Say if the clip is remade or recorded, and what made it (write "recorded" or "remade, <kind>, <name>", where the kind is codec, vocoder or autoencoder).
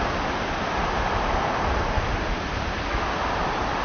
recorded